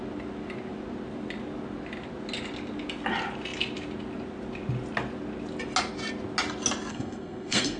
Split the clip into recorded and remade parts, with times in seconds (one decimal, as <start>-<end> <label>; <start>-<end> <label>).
0.0-6.9 recorded; 6.9-7.8 remade